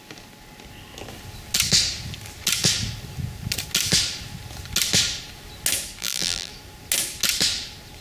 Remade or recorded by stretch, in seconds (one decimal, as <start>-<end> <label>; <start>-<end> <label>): 0.0-6.0 recorded; 6.0-6.5 remade; 6.5-8.0 recorded